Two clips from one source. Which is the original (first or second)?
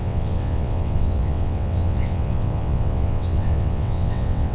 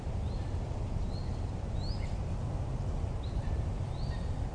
second